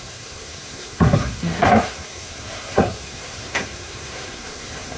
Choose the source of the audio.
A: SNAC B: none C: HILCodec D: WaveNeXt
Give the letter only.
A